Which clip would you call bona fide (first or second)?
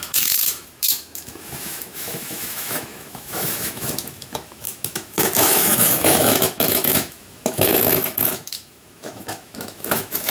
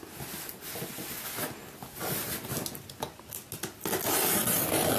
second